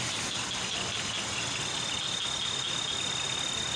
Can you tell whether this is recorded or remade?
recorded